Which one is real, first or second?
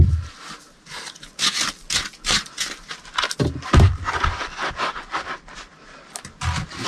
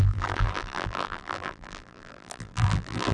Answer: first